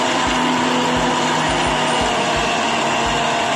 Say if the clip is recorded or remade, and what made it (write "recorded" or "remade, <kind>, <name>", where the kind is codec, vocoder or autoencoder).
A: recorded